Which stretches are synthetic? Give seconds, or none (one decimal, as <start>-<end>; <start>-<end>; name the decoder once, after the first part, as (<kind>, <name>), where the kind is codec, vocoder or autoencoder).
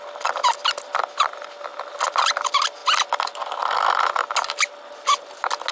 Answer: none